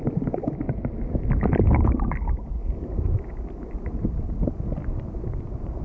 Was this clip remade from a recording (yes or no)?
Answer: no